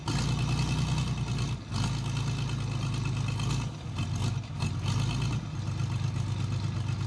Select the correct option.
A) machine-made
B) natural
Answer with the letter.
B